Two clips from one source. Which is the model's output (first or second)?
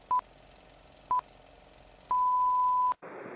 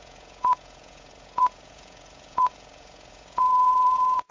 second